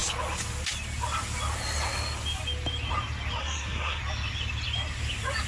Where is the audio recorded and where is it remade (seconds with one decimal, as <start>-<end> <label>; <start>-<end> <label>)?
0.0-3.4 recorded; 3.4-4.0 remade; 4.0-5.5 recorded